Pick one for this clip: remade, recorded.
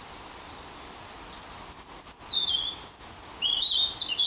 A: recorded